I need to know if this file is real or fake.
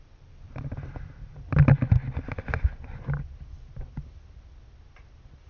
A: real